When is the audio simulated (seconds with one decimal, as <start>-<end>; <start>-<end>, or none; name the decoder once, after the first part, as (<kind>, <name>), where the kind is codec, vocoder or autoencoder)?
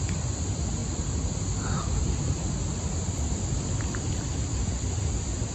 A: none